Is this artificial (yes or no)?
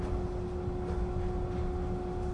no